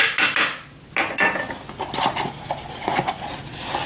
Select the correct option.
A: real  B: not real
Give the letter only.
A